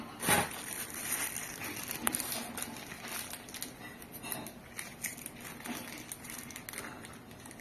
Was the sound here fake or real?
real